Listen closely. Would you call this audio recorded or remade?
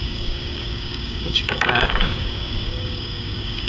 remade